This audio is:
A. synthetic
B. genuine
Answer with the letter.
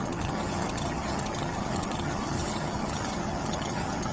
A